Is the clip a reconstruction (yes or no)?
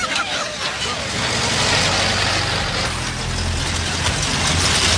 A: no